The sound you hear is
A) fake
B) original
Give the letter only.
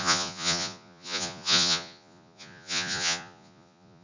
A